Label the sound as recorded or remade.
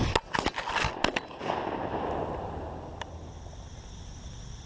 recorded